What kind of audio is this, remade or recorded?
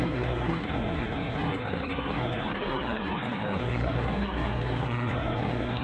remade